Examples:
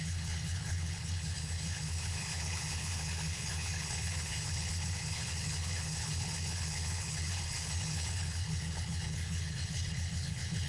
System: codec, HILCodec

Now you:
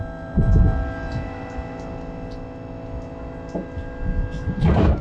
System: none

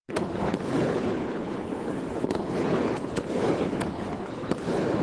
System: codec, HILCodec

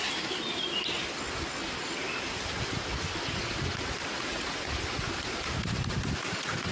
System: none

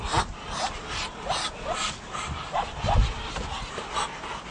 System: none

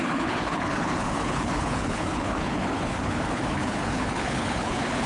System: codec, HILCodec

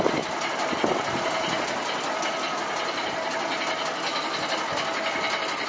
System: none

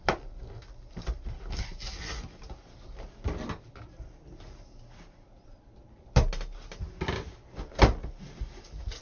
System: none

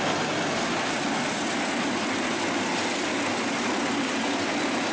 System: none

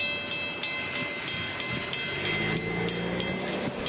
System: none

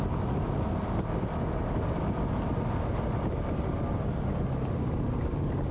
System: none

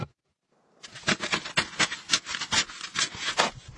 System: none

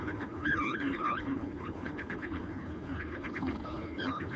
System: codec, HILCodec